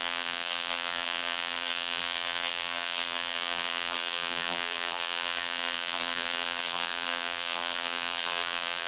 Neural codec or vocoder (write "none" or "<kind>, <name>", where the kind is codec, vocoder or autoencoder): vocoder, BigVGAN v2